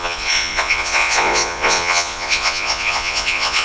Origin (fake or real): fake